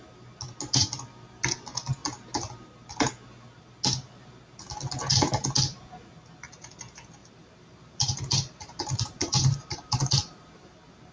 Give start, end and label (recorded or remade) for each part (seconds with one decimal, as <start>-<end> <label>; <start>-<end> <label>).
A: 0.0-7.2 recorded; 7.2-11.1 remade